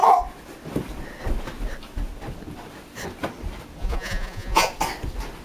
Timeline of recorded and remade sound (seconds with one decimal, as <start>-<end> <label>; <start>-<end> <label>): 0.0-3.8 recorded; 3.8-4.7 remade; 4.7-5.4 recorded